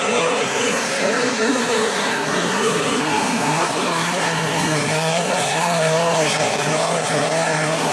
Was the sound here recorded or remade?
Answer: remade